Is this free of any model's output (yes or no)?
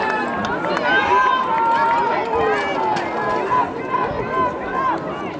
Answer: yes